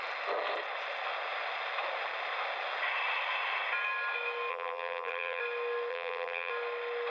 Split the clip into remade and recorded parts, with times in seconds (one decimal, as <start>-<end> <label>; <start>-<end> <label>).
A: 0.0-4.5 recorded; 4.5-5.4 remade; 5.4-5.9 recorded; 5.9-6.5 remade; 6.5-7.1 recorded